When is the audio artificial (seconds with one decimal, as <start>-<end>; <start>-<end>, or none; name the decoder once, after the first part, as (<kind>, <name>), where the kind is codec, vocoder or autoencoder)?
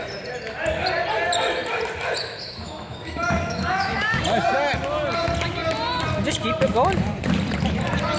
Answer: 2.2-4.2 (autoencoder, DAC-VAE)